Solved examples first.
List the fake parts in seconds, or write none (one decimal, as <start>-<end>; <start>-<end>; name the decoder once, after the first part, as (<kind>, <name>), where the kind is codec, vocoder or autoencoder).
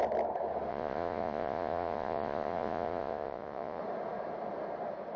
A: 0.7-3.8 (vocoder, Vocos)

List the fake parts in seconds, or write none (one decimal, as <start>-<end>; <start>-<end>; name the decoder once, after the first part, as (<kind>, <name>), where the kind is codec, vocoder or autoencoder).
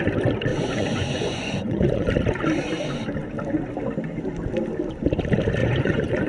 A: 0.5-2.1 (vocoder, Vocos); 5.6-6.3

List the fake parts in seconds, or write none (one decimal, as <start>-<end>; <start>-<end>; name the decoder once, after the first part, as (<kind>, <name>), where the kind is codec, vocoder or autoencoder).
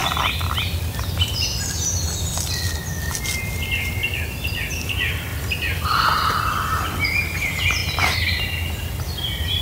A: 0.0-1.0 (vocoder, BigVGAN v2); 4.0-4.8; 5.3-6.8